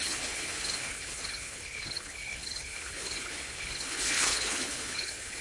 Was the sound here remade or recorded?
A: remade